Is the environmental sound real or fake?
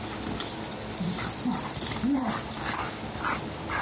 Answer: real